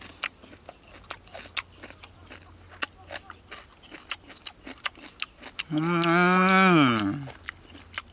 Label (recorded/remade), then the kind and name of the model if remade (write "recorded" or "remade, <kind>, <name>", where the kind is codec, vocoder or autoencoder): recorded